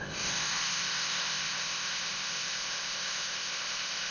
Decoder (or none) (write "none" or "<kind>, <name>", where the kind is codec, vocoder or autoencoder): codec, ZipCodec